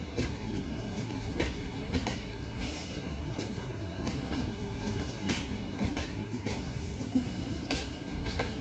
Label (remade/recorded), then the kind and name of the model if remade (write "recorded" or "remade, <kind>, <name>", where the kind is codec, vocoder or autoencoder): remade, codec, SNAC